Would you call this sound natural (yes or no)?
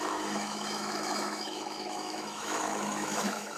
no